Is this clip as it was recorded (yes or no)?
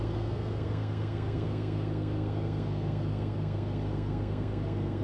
no